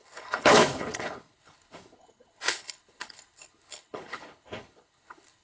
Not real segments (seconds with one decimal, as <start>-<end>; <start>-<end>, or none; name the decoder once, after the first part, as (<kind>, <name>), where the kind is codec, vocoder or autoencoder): 0.0-5.4 (codec, HILCodec)